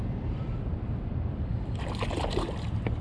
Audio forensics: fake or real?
fake